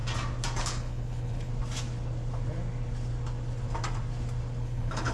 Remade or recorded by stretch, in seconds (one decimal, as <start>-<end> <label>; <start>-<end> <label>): 0.0-0.6 recorded; 0.6-1.5 remade; 1.5-4.6 recorded; 4.6-5.1 remade